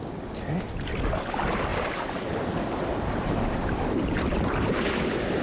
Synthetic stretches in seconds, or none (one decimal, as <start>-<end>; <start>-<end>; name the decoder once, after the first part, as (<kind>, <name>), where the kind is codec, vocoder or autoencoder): 1.7-4.9 (vocoder, BigVGAN v2)